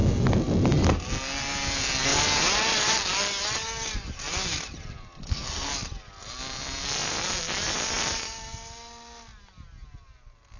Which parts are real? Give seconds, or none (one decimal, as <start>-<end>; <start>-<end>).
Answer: 0.0-5.2; 5.7-10.6